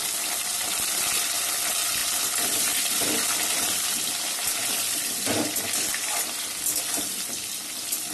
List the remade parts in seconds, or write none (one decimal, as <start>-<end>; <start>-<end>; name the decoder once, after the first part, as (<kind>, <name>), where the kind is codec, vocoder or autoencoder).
none